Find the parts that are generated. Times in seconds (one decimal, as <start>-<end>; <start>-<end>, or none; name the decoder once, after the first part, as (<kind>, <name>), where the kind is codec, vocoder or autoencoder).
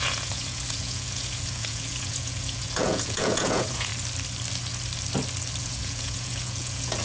0.0-3.9 (vocoder, Vocos); 5.6-7.0